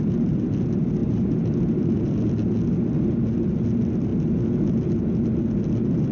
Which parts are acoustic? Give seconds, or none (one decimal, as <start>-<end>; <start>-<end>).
0.0-1.0; 2.2-6.1